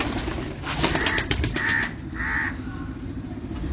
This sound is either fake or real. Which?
real